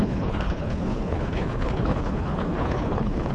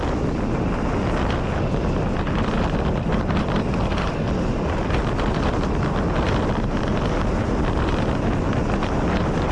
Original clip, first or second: second